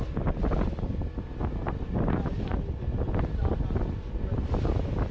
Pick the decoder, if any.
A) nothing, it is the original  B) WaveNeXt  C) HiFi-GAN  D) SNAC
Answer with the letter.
A